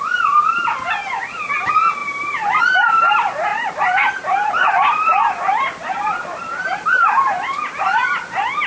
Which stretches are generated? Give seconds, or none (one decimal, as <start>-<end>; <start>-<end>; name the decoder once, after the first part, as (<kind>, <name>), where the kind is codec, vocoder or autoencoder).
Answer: 2.0-2.6 (vocoder, BigVGAN v2); 3.5-4.5; 5.1-7.1